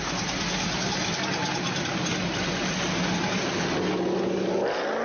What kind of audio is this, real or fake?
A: real